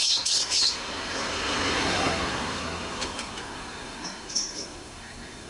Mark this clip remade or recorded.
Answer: remade